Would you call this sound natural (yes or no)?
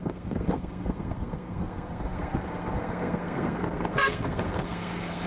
no